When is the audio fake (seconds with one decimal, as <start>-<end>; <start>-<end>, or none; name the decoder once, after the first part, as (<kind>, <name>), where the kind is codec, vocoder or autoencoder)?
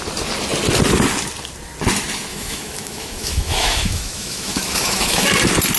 2.3-5.3 (autoencoder, DAC-VAE)